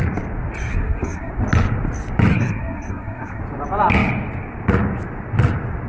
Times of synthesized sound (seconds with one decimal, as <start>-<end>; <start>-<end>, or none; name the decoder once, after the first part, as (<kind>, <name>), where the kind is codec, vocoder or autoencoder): 0.7-1.3 (codec, SNAC); 2.3-3.4